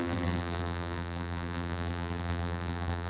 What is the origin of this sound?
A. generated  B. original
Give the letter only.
A